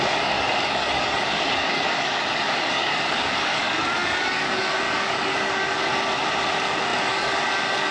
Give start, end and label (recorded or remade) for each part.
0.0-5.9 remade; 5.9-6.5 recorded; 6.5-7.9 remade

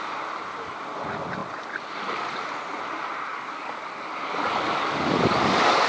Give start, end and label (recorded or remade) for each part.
0.0-3.3 recorded; 3.3-5.9 remade

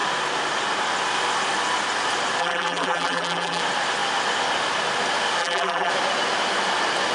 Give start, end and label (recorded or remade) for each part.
0.0-2.4 recorded; 2.4-3.6 remade; 3.6-5.4 recorded; 5.4-5.9 remade; 5.9-7.1 recorded

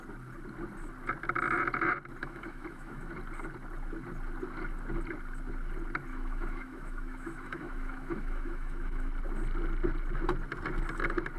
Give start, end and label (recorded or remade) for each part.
0.0-2.2 recorded; 2.2-3.1 remade; 3.1-6.1 recorded; 6.1-9.1 remade; 9.1-11.4 recorded

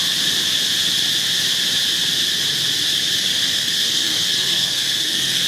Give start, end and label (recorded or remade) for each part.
0.0-3.3 recorded; 3.3-5.5 remade

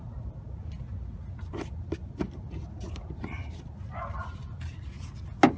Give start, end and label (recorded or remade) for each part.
0.0-5.6 recorded

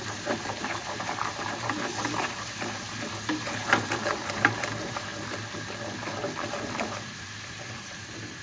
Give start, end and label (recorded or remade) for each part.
0.0-5.1 remade; 5.1-6.5 recorded; 6.5-8.4 remade